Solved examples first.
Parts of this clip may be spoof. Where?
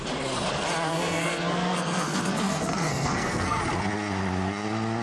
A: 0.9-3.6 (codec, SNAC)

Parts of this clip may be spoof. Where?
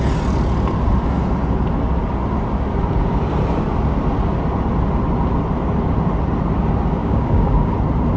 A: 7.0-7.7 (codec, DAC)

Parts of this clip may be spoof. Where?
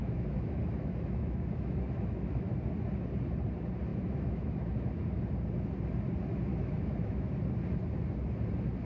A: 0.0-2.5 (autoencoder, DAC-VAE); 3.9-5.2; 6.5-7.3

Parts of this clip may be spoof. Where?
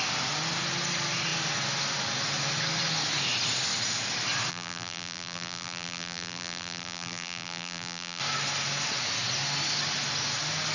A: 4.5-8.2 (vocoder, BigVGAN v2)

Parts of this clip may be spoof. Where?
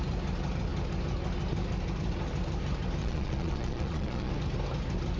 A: 3.0-4.3 (vocoder, Vocos)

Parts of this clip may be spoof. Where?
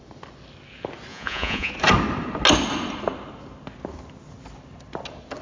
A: 1.1-1.7 (vocoder, Vocos)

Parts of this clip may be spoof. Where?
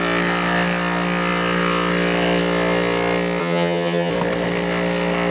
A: 3.4-4.1 (vocoder, HiFi-GAN)